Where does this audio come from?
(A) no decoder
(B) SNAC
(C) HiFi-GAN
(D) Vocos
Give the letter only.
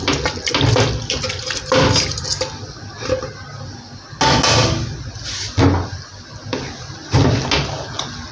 A